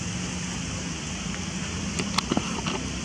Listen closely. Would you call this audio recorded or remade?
recorded